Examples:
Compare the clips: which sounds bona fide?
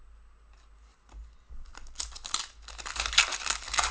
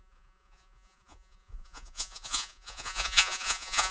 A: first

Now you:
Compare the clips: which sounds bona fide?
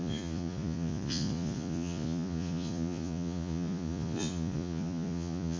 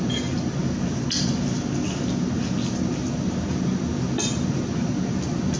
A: second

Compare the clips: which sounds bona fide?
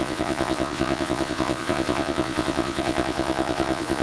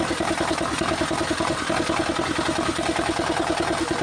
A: second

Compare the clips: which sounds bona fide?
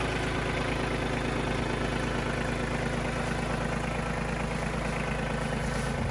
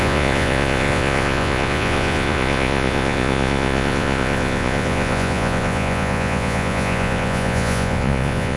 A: first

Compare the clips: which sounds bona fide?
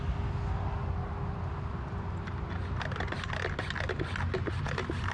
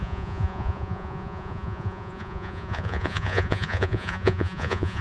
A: first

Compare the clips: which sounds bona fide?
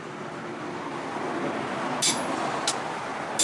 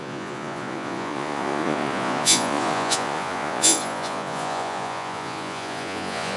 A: first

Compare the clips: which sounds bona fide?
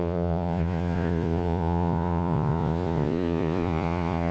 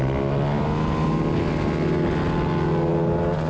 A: second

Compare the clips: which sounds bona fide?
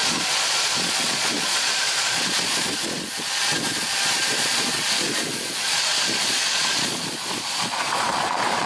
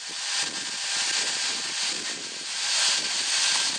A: second